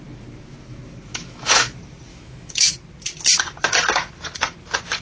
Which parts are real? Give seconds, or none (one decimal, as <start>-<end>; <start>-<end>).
0.0-1.1; 1.7-2.1; 2.7-5.0